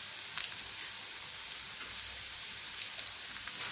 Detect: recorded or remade recorded